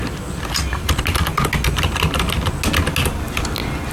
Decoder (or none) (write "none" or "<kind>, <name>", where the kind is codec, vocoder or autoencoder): none